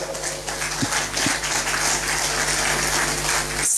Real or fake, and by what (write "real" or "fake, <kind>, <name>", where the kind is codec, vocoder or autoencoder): real